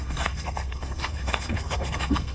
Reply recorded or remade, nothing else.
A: remade